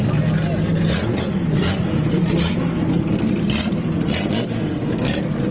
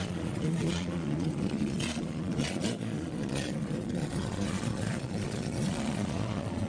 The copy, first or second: second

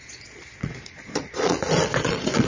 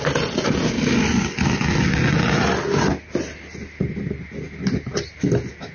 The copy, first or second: first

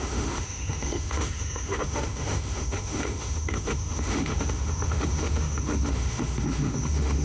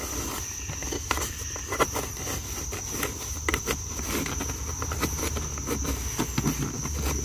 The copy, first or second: first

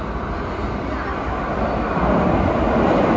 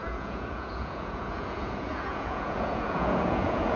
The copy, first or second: second